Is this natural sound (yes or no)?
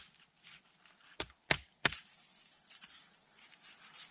yes